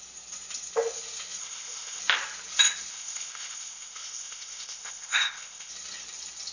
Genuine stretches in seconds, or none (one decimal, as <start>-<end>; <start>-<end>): 0.0-1.4; 2.0-2.9; 5.7-6.5